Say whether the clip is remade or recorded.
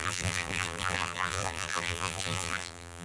remade